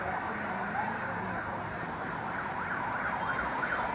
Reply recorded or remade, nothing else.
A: recorded